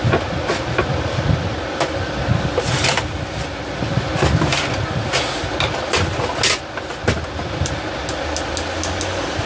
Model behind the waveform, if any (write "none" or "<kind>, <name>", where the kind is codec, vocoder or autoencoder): none